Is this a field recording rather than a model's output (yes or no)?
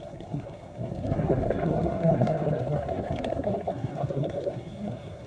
no